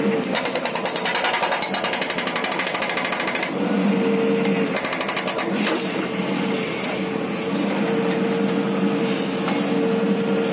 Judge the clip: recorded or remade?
recorded